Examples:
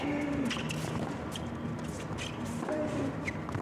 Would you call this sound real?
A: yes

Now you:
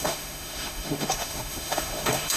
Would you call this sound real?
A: no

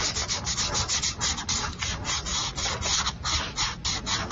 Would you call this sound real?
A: yes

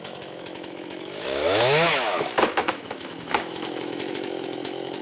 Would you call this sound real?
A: no